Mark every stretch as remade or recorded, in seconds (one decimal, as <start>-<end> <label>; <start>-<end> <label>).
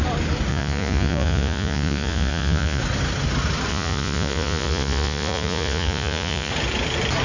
0.0-0.5 recorded; 0.5-2.8 remade; 2.8-3.7 recorded; 3.7-6.5 remade; 6.5-7.2 recorded